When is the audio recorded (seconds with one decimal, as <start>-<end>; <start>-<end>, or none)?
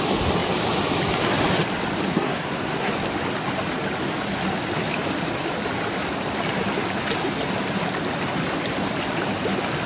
0.0-2.1; 2.9-9.9